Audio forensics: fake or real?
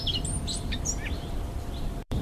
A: fake